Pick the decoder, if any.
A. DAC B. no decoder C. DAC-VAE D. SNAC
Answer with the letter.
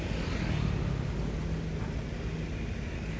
B